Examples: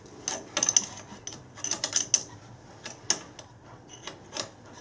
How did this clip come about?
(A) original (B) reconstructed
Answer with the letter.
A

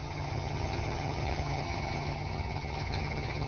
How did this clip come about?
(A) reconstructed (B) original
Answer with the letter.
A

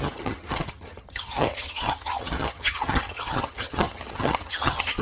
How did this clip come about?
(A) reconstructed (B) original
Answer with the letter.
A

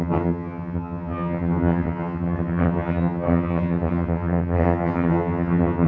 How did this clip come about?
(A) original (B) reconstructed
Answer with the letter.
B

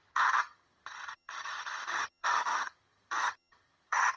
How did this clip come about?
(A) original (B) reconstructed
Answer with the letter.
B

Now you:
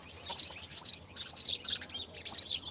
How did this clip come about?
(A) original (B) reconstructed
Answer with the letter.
A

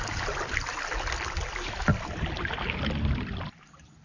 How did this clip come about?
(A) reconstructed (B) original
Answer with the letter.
B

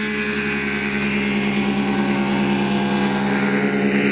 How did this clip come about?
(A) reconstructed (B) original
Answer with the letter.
B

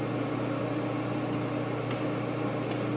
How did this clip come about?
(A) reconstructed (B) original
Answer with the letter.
B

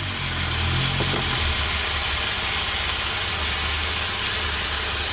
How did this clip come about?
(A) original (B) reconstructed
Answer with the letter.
A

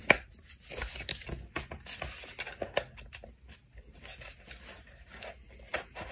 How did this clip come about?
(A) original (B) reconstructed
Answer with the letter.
A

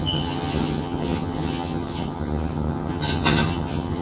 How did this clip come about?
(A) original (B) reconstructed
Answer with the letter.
B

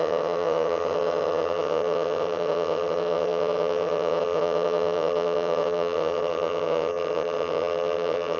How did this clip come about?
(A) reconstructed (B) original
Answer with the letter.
A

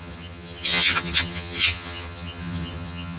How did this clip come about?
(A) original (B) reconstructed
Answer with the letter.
B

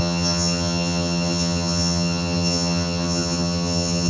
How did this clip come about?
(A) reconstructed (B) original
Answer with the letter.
A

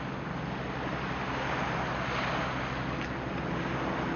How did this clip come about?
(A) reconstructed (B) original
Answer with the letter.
B